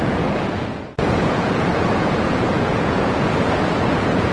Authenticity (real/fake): fake